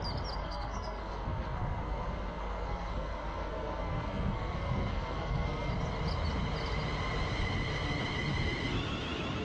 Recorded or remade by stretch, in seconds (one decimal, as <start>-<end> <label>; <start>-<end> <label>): 0.0-0.4 recorded; 0.4-5.7 remade; 5.7-9.4 recorded